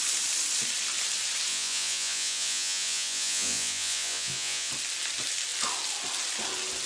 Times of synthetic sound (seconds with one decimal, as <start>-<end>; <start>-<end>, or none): 1.5-4.7